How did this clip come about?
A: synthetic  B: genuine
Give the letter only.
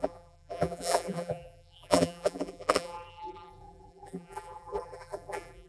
A